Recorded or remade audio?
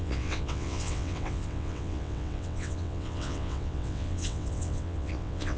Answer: remade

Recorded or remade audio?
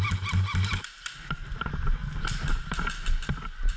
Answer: recorded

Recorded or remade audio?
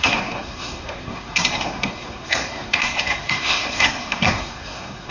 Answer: remade